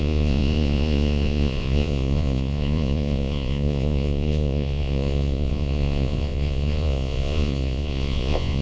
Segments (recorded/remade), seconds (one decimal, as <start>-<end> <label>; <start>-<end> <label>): 0.0-8.6 remade